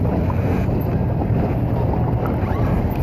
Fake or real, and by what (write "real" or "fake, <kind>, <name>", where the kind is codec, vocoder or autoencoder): real